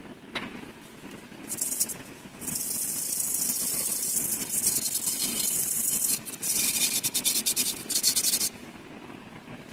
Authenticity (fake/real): real